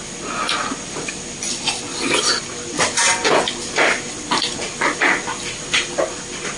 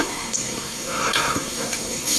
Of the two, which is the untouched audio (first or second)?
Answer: first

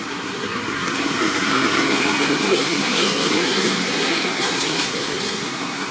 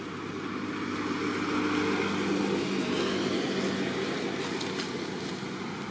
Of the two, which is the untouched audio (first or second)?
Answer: second